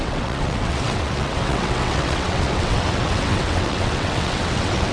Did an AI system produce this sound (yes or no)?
yes